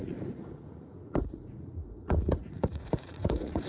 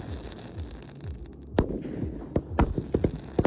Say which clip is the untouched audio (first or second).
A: second